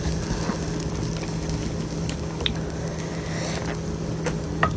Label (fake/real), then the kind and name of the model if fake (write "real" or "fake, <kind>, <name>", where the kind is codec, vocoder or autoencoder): real